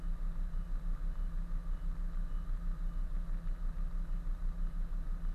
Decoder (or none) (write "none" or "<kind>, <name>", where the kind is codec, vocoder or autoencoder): none